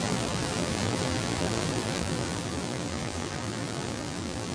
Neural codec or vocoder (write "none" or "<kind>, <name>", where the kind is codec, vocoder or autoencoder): vocoder, BigVGAN v2